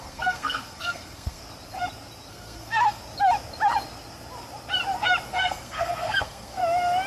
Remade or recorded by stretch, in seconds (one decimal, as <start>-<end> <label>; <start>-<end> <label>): 0.0-1.4 remade; 1.4-2.3 recorded; 2.3-3.0 remade; 3.0-5.3 recorded; 5.3-6.6 remade; 6.6-7.1 recorded